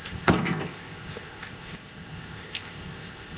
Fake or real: fake